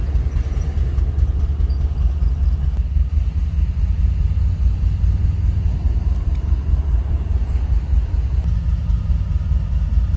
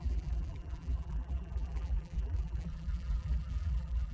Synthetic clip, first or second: second